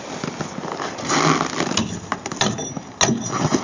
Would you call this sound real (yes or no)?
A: yes